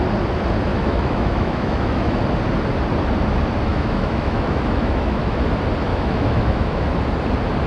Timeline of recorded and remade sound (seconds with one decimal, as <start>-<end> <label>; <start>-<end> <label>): 0.0-0.7 recorded; 0.7-2.2 remade; 2.2-3.7 recorded; 3.7-5.4 remade; 5.4-5.9 recorded; 5.9-6.9 remade; 6.9-7.7 recorded